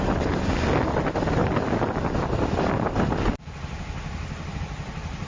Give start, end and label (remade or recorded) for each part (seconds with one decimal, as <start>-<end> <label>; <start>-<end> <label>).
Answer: 0.0-5.3 recorded